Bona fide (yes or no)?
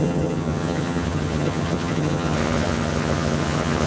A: no